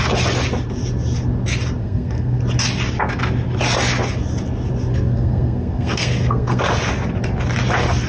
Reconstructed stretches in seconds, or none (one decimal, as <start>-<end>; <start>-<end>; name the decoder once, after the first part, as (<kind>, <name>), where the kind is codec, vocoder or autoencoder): 1.8-2.4 (codec, SNAC); 4.9-6.6